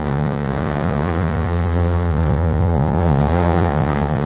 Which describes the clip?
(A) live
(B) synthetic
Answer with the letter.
B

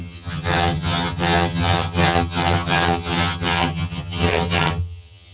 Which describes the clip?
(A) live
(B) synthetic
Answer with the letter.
B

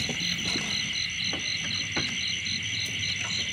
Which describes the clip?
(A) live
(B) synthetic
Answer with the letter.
A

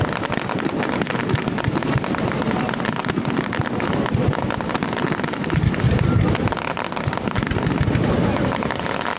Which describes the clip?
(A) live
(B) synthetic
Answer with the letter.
A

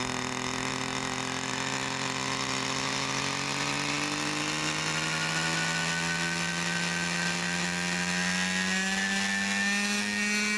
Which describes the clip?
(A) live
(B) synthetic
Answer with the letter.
A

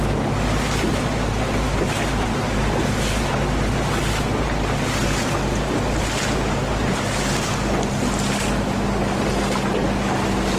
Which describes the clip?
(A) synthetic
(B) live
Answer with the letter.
B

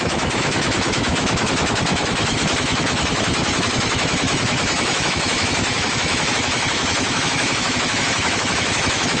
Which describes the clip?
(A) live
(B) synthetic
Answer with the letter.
B